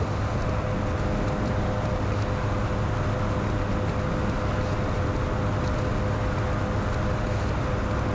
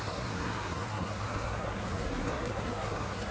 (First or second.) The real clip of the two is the first